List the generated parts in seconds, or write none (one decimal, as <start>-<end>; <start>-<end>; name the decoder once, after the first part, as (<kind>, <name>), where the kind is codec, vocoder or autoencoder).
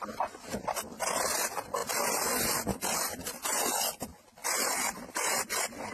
none